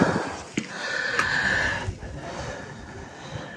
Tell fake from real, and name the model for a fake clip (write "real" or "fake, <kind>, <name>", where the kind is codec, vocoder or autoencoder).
real